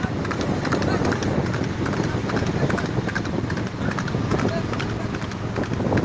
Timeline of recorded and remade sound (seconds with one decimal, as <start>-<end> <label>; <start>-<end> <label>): 0.0-6.0 recorded